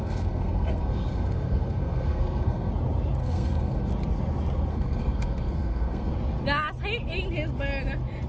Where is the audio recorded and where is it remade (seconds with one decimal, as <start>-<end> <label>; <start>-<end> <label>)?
0.0-2.7 remade; 2.7-3.2 recorded; 3.2-3.9 remade; 3.9-4.7 recorded; 4.7-6.1 remade; 6.1-8.3 recorded